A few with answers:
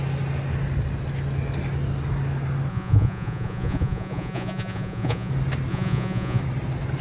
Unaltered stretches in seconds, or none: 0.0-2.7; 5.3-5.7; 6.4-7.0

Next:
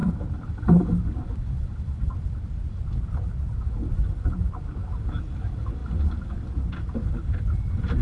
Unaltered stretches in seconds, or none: 0.0-8.0

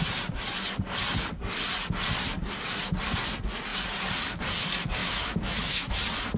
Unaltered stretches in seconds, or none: 0.0-5.0; 5.9-6.4

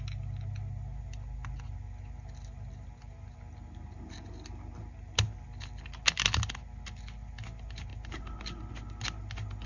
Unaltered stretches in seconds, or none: 0.0-9.7

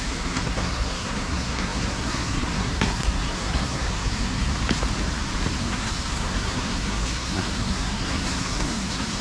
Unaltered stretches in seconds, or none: 4.5-5.6

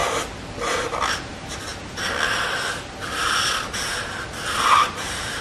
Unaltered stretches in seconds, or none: 0.0-1.1; 1.7-4.9

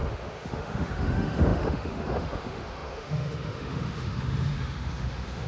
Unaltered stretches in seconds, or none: none

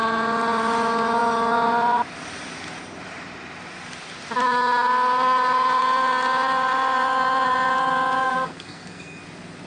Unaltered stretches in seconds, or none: 0.0-8.2; 9.2-9.7